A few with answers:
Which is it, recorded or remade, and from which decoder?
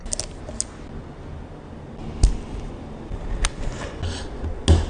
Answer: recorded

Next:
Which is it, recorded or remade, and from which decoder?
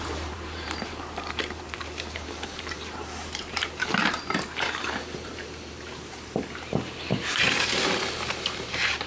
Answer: remade, vocoder, BigVGAN v2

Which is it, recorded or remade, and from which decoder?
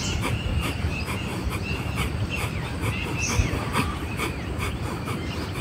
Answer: remade, vocoder, BigVGAN v2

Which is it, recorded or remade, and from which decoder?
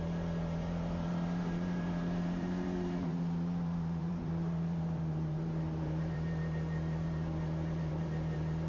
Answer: remade, vocoder, BigVGAN v2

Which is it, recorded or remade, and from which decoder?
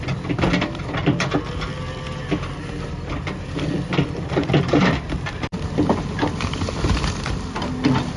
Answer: remade, vocoder, BigVGAN v2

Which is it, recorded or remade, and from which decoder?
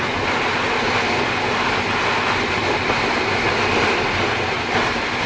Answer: recorded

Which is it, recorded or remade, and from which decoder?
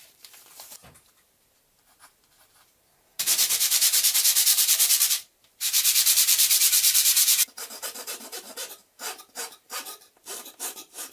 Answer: remade, vocoder, BigVGAN v2